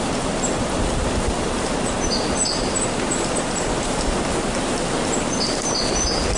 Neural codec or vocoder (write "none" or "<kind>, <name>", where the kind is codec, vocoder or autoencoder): none